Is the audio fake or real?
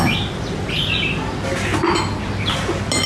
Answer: real